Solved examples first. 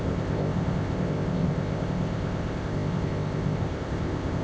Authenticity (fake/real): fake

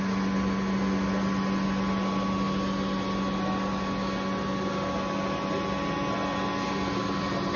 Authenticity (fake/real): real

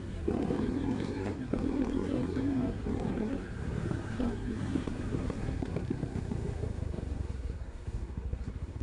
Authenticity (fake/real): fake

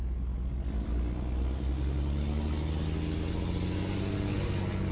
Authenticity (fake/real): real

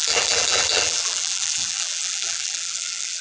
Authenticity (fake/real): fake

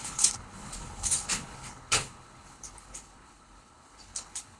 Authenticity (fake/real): fake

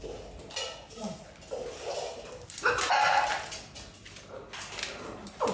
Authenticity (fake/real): real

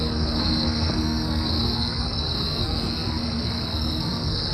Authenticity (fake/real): fake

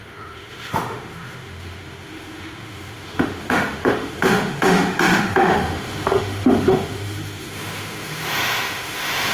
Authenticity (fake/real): fake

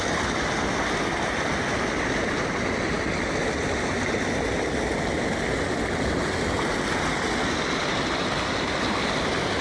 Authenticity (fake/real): real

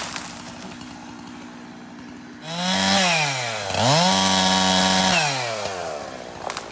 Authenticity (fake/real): real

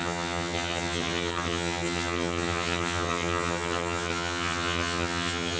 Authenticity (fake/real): fake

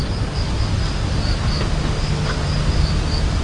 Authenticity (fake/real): real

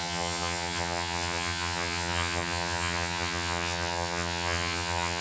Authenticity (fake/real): fake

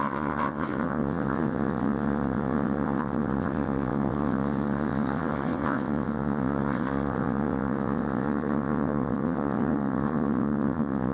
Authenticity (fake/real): fake